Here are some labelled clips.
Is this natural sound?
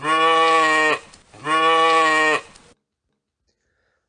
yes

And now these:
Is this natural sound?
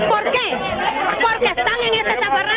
yes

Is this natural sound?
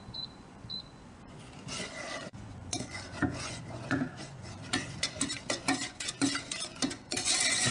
no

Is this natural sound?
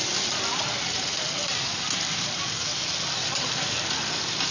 yes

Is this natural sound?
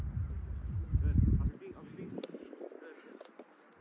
yes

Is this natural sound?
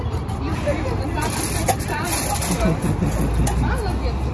yes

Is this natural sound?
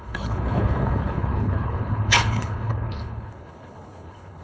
no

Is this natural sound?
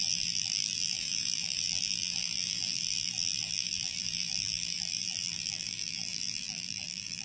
no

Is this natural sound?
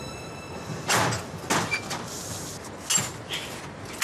yes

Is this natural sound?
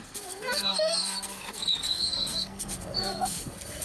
no